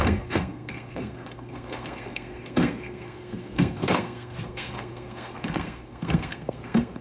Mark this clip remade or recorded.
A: remade